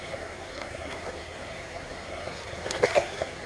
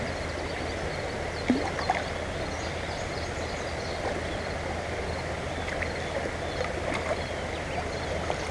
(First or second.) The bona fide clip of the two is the second